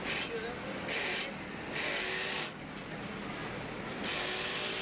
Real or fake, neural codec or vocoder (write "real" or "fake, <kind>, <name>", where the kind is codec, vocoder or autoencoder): real